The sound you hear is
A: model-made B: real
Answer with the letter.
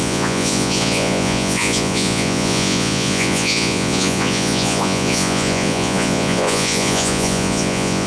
A